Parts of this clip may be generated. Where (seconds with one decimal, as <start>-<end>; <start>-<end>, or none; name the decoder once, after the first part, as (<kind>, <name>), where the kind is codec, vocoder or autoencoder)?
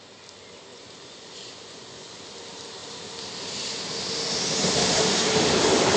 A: 0.7-2.2 (vocoder, Vocos)